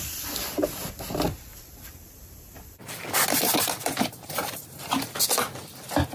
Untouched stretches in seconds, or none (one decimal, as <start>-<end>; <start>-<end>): 0.0-1.5; 5.2-6.1